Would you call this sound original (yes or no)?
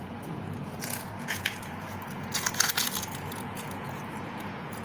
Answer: no